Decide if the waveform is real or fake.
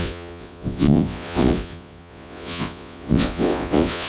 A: fake